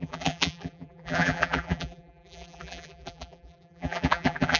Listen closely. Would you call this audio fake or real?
fake